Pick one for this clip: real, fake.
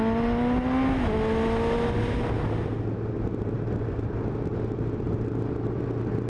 real